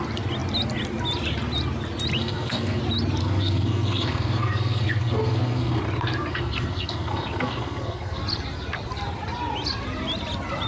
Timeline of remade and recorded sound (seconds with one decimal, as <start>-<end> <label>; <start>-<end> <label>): 0.0-2.2 recorded; 2.2-2.8 remade; 2.8-3.2 recorded; 3.2-5.8 remade; 5.8-6.3 recorded; 6.3-8.2 remade; 8.2-10.7 recorded